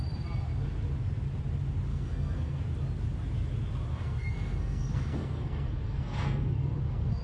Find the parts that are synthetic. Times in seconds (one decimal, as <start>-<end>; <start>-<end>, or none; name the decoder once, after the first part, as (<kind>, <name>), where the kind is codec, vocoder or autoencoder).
1.9-2.6 (codec, SNAC); 3.9-7.2